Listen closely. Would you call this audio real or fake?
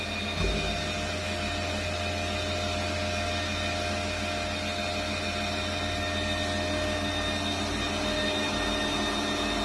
real